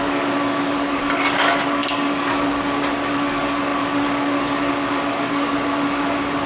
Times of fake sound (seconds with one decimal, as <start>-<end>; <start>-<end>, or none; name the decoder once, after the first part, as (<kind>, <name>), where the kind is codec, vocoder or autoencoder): 0.0-6.5 (codec, DAC)